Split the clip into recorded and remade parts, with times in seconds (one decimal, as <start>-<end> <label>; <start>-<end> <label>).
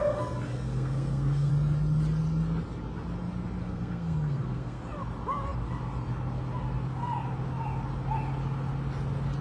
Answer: 0.0-0.5 recorded; 0.5-1.5 remade; 1.5-3.6 recorded; 3.6-4.8 remade; 4.8-9.4 recorded